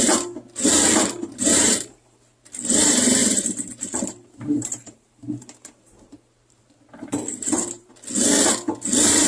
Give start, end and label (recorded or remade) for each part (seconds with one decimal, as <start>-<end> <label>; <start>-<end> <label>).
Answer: 0.0-1.2 recorded; 1.2-2.2 remade; 2.2-3.2 recorded; 3.2-7.9 remade; 7.9-9.3 recorded